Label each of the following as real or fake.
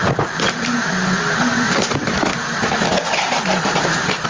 real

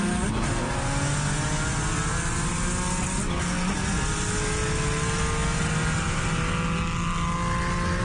real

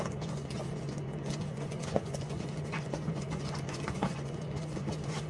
fake